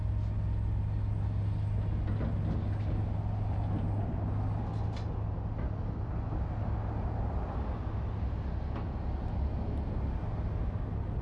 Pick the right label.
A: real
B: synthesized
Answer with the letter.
A